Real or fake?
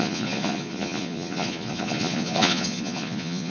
fake